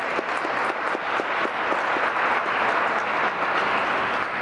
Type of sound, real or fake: real